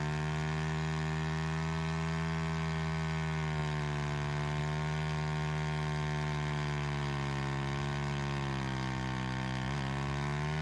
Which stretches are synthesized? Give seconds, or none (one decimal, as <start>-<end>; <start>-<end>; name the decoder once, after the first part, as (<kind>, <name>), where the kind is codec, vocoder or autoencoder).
none